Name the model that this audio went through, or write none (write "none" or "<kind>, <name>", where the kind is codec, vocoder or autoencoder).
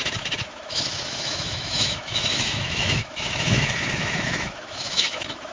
autoencoder, DAC-VAE